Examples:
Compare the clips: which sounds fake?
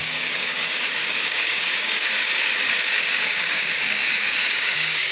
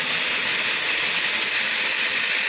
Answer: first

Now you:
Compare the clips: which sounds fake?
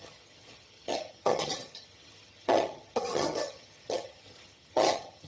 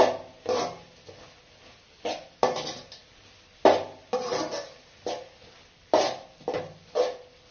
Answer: first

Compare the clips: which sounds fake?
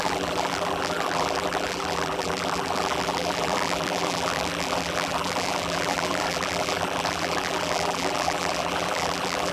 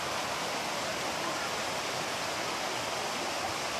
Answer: first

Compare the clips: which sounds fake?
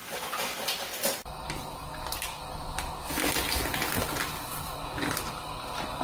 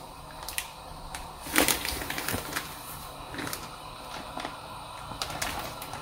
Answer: second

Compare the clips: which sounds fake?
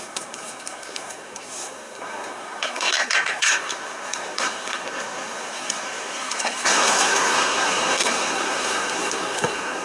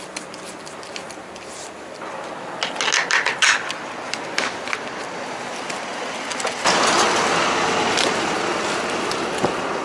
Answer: first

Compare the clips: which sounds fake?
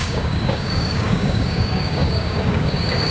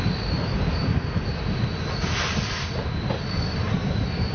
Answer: first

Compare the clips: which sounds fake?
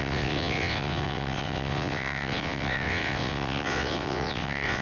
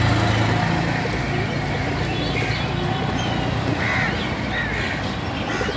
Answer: first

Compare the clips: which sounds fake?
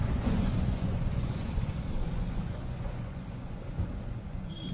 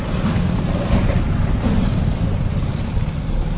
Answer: first